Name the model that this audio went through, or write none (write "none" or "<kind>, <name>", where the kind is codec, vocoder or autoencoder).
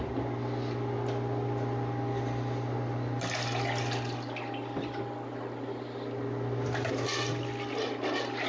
none